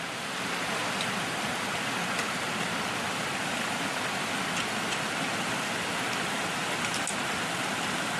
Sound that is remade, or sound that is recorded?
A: recorded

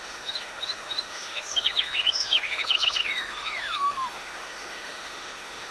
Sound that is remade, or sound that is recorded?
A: remade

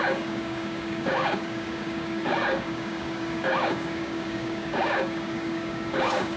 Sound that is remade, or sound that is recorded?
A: remade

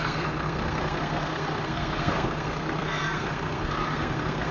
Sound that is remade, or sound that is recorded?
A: remade